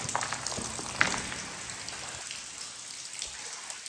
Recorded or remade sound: recorded